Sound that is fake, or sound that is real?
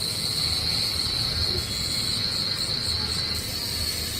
real